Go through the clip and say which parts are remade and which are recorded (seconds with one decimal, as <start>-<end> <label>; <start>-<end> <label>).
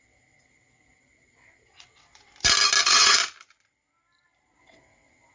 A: 0.0-2.3 remade; 2.3-2.8 recorded; 2.8-3.2 remade; 3.2-4.6 recorded; 4.6-5.3 remade